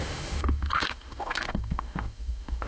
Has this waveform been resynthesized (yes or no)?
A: yes